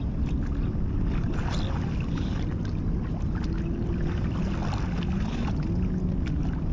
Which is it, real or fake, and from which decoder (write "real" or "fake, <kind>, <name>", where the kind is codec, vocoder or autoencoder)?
real